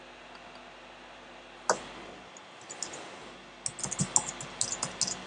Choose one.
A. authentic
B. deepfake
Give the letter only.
A